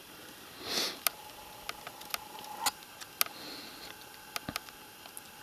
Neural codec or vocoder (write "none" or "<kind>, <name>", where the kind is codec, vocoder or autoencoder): none